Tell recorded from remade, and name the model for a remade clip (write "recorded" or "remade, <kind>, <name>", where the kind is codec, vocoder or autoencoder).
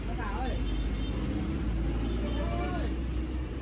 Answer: recorded